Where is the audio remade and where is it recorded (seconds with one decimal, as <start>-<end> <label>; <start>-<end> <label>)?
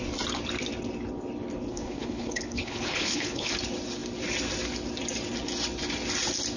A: 0.0-1.7 recorded; 1.7-3.5 remade; 3.5-6.6 recorded